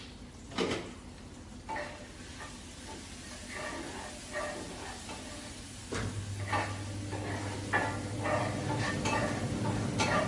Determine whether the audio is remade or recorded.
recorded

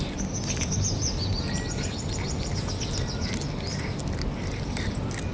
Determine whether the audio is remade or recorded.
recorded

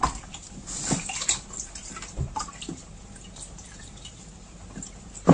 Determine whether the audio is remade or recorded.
remade